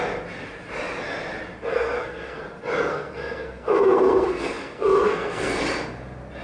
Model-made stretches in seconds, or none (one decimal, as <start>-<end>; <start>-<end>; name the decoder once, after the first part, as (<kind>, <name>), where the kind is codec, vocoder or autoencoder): 1.7-2.4 (codec, SNAC); 2.9-5.6